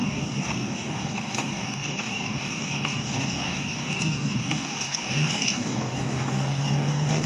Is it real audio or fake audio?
fake